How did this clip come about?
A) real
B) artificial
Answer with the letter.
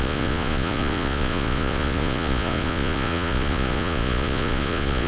B